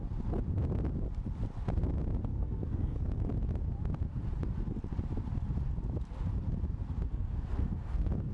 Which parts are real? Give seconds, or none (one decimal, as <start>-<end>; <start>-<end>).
0.0-2.3; 3.3-7.1